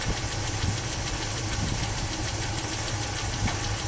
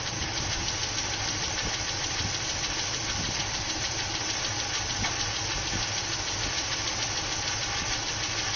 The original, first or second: first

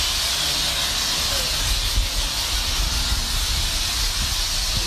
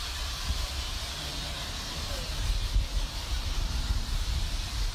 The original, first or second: first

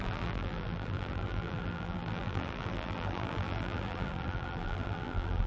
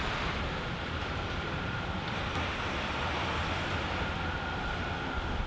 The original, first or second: second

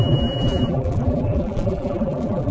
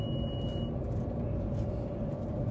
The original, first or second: second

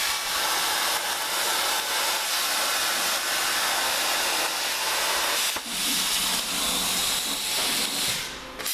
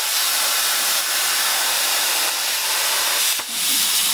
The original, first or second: first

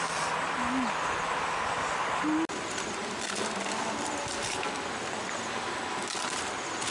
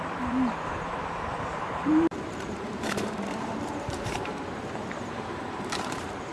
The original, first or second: first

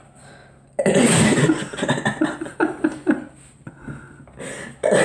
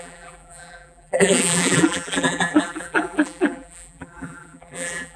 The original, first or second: first